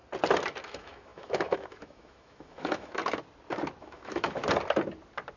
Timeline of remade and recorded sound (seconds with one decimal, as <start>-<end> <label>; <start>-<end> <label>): 0.0-0.6 recorded; 0.6-3.0 remade; 3.0-3.8 recorded; 3.8-4.4 remade; 4.4-5.4 recorded